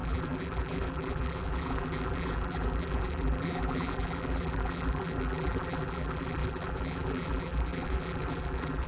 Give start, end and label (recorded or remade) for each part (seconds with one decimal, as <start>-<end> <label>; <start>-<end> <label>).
0.0-8.9 remade